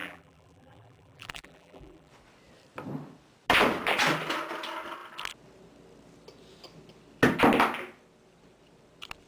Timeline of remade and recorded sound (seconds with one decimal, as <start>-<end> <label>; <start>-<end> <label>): 0.0-2.1 remade; 2.1-9.3 recorded